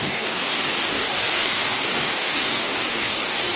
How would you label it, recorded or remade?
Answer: remade